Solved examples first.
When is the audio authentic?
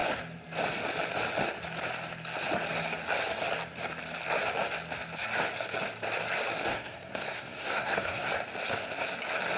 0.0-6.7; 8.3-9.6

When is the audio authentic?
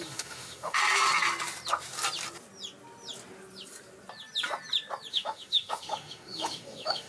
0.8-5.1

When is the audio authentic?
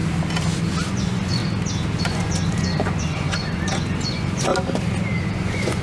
0.0-0.9; 1.4-2.0; 4.5-5.2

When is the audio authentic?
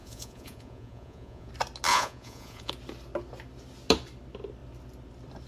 1.5-1.9; 2.7-5.5